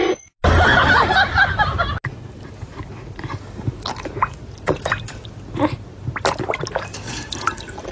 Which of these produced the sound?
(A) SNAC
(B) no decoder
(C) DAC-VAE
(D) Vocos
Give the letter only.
B